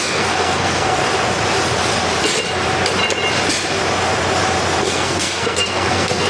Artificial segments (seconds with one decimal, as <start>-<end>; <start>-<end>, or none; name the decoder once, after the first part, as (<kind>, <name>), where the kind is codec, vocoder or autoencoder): 0.0-1.0 (codec, SNAC); 4.8-6.3